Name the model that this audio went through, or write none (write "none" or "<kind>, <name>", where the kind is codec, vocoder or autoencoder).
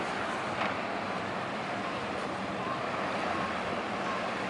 vocoder, BigVGAN v2